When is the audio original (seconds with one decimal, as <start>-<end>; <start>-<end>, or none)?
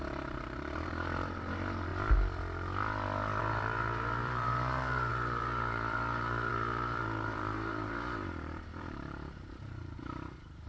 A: 1.9-3.4